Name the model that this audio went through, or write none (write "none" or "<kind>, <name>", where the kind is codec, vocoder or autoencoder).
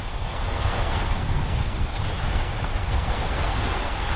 codec, SNAC